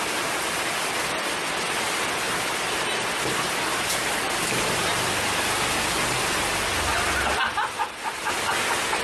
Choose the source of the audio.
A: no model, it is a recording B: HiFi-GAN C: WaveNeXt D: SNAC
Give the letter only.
A